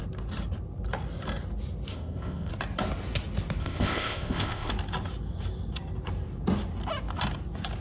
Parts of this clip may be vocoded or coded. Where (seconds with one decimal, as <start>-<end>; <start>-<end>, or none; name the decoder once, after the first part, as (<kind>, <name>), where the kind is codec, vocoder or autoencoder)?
1.9-2.5 (codec, ZipCodec); 3.6-4.7